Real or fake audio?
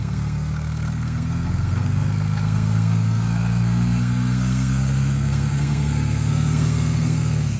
fake